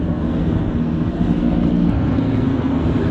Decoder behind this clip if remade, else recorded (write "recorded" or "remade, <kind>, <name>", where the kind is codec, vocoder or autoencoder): remade, codec, SNAC